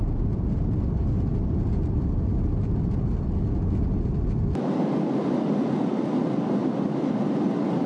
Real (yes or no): yes